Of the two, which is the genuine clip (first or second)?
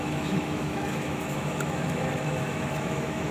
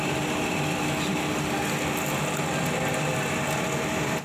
second